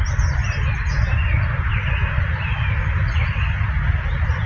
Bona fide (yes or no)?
yes